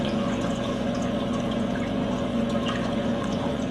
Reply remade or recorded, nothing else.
remade